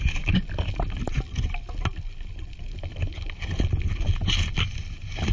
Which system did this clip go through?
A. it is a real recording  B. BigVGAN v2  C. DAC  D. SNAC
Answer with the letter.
A